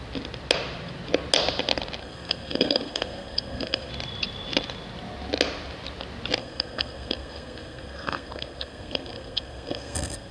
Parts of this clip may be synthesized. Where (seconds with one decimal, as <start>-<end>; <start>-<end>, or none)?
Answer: 2.0-3.9; 6.4-10.3